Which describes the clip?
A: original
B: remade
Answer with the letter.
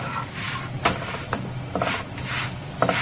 A